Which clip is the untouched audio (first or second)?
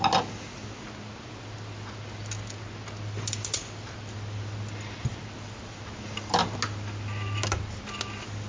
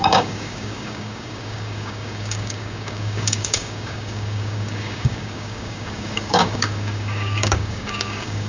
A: first